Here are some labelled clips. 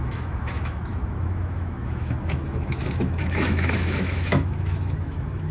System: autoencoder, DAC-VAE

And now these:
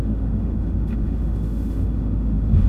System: autoencoder, DAC-VAE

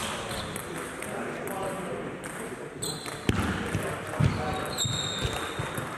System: none